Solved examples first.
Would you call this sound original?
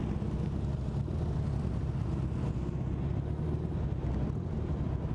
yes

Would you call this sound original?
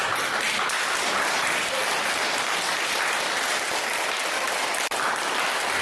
yes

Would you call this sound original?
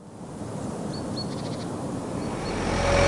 yes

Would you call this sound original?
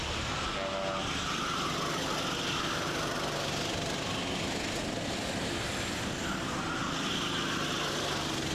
yes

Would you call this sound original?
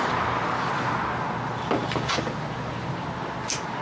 yes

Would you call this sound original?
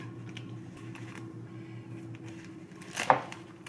yes